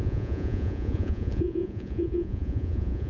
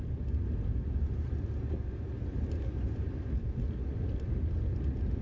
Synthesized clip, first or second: first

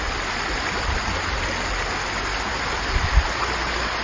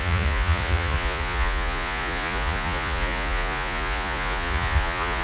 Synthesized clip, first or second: second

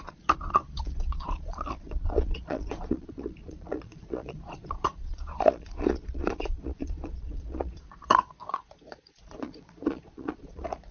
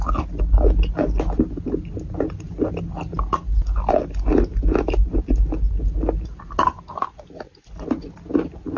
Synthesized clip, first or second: first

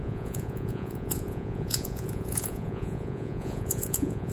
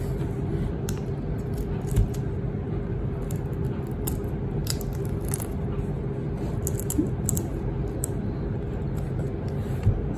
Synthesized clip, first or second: first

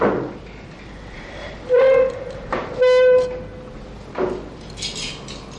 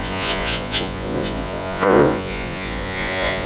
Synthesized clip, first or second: second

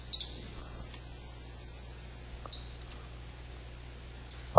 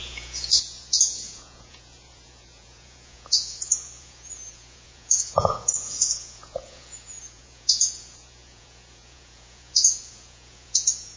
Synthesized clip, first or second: second